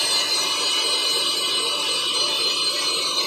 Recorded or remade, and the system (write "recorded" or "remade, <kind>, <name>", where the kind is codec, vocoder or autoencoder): recorded